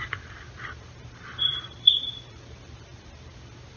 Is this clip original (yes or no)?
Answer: no